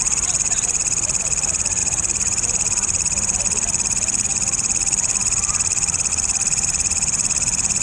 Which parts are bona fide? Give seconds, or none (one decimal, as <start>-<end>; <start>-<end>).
none